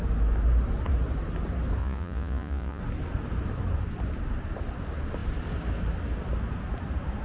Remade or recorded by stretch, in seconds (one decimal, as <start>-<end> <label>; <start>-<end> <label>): 0.0-1.8 recorded; 1.8-2.8 remade; 2.8-7.2 recorded